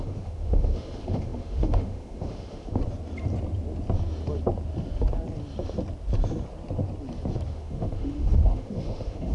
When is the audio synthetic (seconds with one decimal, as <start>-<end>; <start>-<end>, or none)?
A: 0.0-2.8; 7.5-9.3